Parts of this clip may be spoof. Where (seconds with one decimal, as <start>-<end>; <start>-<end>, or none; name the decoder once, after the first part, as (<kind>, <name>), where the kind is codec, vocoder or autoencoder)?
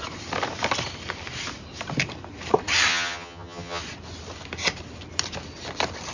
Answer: 2.9-3.8 (vocoder, HiFi-GAN)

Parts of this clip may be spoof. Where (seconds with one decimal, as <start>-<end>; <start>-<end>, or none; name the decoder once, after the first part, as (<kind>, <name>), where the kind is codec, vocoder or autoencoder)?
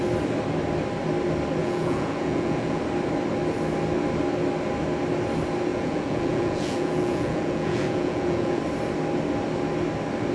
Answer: 1.6-2.8 (vocoder, Vocos); 5.7-8.6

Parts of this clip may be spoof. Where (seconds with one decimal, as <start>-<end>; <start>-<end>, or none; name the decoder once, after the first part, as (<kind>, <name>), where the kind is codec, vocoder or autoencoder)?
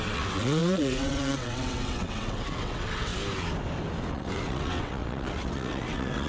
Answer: 0.0-3.1 (vocoder, WaveNeXt); 4.1-6.3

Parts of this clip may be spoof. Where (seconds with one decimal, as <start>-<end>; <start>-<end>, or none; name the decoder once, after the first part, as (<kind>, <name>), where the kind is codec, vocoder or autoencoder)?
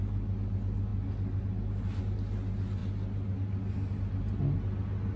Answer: none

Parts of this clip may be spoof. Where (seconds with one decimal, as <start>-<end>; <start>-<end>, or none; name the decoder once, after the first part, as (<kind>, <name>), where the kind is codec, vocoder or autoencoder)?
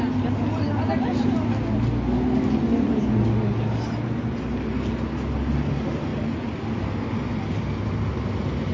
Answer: none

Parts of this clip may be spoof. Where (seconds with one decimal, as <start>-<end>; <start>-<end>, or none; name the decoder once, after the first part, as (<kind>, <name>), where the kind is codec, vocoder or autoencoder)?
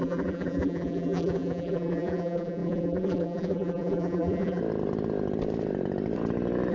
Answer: 0.0-4.6 (vocoder, BigVGAN v2)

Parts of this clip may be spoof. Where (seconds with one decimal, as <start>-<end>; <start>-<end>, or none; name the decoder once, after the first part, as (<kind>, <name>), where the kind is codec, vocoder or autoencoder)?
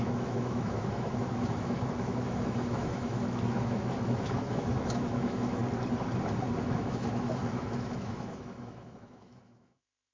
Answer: 0.0-5.6 (autoencoder, DAC-VAE); 6.6-10.1